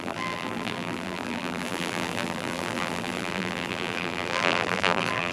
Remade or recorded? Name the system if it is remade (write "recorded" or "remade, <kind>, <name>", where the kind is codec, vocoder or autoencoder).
remade, vocoder, BigVGAN v2